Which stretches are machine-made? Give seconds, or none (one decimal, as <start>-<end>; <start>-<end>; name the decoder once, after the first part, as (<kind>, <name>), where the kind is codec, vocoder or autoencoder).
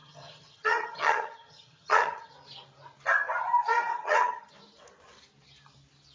0.0-2.3 (vocoder, HiFi-GAN); 3.9-4.5